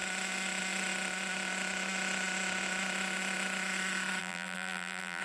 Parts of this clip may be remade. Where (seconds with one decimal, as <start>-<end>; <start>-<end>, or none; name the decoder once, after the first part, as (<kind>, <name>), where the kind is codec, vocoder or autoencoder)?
4.2-5.2 (vocoder, BigVGAN v2)